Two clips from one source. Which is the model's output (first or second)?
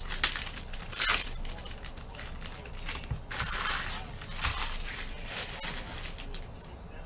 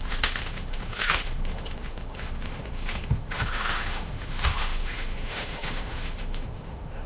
second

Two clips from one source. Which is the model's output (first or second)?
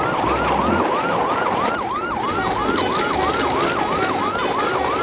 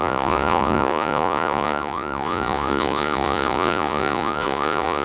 second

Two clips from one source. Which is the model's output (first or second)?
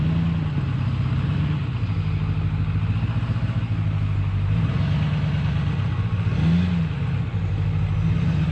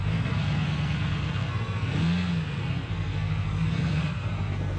second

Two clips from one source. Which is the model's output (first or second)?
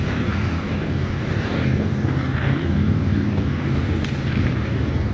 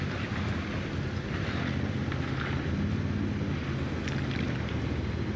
first